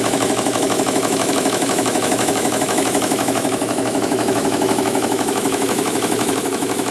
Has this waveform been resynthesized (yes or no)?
yes